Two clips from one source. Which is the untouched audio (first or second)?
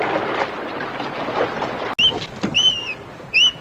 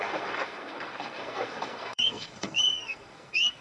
first